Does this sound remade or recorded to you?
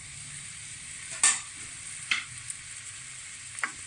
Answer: recorded